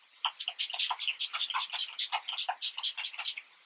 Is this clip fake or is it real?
real